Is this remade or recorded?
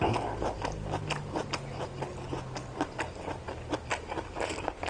recorded